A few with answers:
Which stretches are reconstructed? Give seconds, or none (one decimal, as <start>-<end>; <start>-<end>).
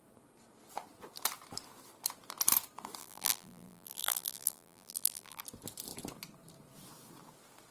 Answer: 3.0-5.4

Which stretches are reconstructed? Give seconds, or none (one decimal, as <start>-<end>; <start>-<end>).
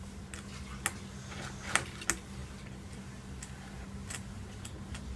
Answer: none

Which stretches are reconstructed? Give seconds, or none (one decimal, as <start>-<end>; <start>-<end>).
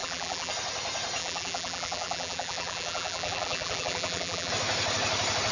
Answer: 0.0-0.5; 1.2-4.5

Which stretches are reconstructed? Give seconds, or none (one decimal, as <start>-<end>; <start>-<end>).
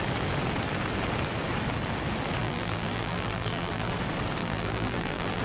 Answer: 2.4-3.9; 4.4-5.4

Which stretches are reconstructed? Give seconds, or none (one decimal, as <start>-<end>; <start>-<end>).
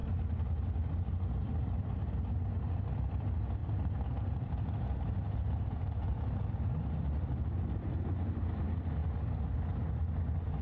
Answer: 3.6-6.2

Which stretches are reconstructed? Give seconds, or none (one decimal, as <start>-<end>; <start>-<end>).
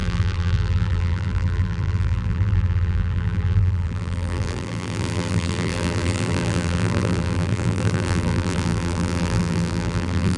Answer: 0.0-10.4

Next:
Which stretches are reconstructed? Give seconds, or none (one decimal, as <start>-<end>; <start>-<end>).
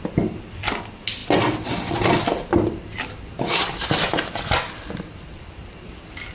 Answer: 3.8-4.5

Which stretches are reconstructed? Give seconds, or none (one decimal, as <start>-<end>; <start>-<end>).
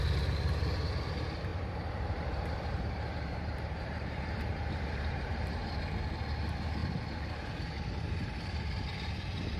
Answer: 1.5-5.8